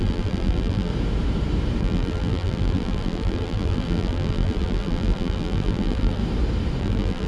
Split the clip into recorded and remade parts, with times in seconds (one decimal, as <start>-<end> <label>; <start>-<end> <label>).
0.0-0.9 remade; 0.9-1.8 recorded; 1.8-6.2 remade; 6.2-6.8 recorded; 6.8-7.3 remade